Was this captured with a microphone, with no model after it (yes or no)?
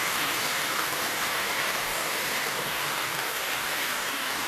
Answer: no